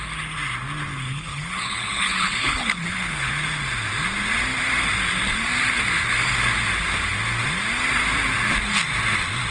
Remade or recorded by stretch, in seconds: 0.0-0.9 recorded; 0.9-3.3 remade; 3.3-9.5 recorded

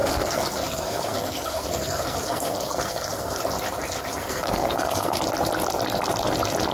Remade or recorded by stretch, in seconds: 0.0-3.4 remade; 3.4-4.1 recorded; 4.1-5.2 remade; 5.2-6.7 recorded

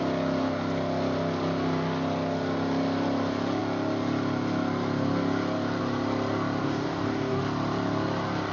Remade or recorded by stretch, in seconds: 0.0-6.6 recorded; 6.6-7.4 remade; 7.4-8.5 recorded

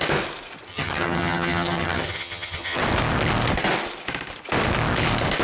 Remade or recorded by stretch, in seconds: 0.0-0.7 recorded; 0.7-2.8 remade; 2.8-5.4 recorded

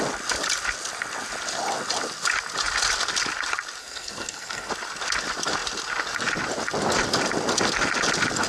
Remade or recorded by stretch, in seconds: 0.0-3.8 recorded; 3.8-4.7 remade; 4.7-8.5 recorded

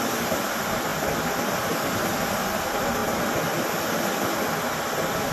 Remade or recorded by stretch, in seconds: 0.0-5.3 recorded

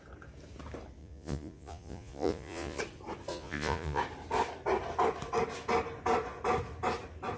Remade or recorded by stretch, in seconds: 0.0-1.0 recorded; 1.0-2.8 remade; 2.8-3.3 recorded; 3.3-4.0 remade; 4.0-7.4 recorded